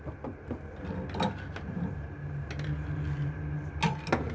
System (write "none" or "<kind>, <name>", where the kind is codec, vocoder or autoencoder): none